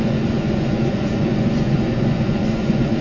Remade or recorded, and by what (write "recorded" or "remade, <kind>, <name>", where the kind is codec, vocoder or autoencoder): remade, vocoder, Vocos